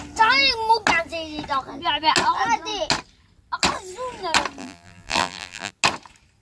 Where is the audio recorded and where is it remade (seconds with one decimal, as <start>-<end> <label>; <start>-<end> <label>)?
0.0-4.6 recorded; 4.6-5.7 remade; 5.7-6.4 recorded